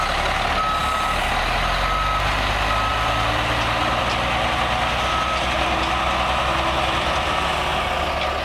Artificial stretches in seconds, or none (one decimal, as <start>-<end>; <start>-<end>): 0.8-1.4; 2.9-4.0